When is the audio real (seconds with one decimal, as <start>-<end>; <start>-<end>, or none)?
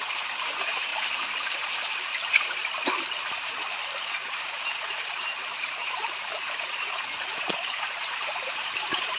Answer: 0.9-1.8; 2.6-3.3